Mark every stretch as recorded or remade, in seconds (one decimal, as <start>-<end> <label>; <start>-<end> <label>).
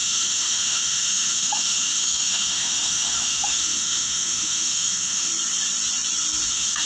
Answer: 0.0-5.3 remade; 5.3-6.5 recorded; 6.5-6.9 remade